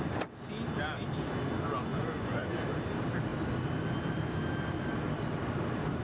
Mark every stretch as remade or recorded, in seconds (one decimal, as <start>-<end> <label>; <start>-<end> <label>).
0.0-1.9 recorded; 1.9-2.6 remade; 2.6-6.0 recorded